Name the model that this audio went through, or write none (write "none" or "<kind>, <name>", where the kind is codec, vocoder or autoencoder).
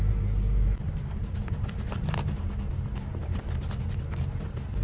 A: none